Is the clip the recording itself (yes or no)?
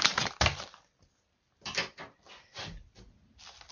no